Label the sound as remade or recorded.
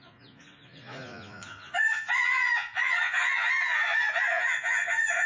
remade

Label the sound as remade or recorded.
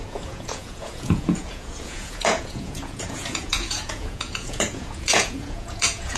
remade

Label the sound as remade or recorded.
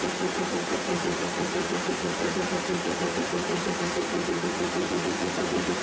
remade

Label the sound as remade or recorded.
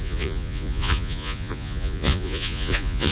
remade